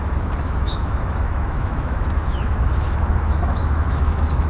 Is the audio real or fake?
fake